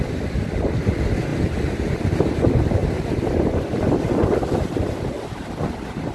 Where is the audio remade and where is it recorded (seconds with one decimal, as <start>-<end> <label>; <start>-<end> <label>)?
0.0-6.1 recorded